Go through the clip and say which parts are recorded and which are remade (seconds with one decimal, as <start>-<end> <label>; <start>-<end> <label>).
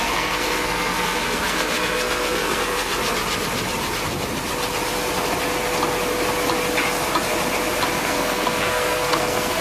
0.0-2.9 remade; 2.9-8.0 recorded; 8.0-9.6 remade